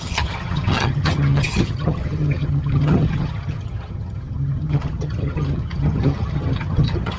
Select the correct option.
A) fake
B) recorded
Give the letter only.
A